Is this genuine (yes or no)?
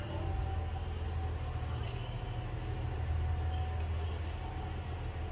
yes